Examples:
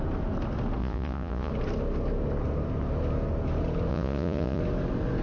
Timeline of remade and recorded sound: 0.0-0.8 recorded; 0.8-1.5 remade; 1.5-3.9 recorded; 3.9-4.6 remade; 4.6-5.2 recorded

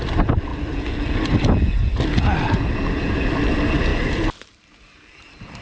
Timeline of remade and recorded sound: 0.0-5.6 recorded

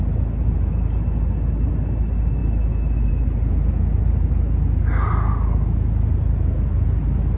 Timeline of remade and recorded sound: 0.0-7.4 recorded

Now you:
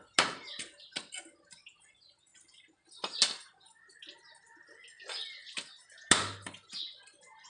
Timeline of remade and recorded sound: 0.0-7.5 recorded

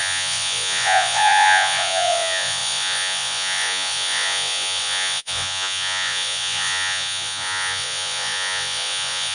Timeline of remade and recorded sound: 0.0-9.3 remade